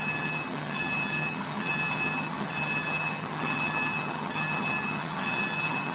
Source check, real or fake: fake